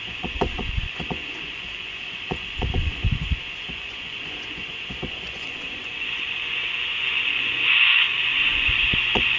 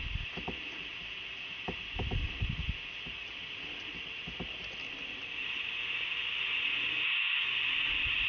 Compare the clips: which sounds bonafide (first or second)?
second